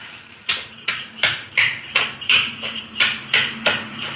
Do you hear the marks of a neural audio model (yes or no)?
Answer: yes